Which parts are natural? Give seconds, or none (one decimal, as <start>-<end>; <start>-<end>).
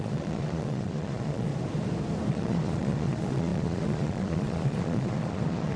1.5-2.3